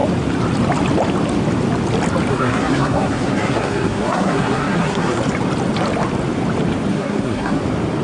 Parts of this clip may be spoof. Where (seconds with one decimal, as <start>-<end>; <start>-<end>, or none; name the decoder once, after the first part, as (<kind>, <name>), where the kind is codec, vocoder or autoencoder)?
2.3-5.2 (codec, SNAC); 6.9-7.6